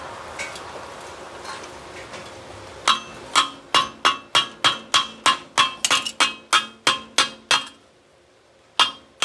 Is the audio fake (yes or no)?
no